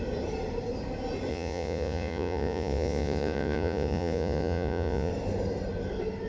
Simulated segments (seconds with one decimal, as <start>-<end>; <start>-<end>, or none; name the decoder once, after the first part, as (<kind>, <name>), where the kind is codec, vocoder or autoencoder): 1.3-5.1 (vocoder, Vocos)